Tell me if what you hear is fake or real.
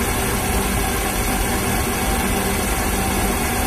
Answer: real